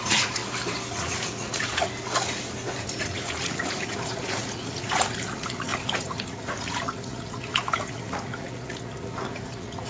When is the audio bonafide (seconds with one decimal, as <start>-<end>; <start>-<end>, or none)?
0.4-0.9; 1.9-3.0